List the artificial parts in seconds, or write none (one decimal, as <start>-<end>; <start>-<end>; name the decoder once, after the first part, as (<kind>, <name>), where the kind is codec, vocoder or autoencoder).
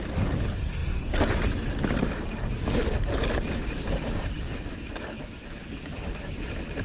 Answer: none